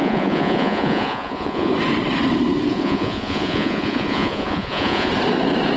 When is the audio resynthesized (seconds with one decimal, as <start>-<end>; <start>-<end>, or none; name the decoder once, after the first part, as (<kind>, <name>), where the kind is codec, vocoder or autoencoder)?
0.0-1.7 (vocoder, Vocos); 2.7-5.1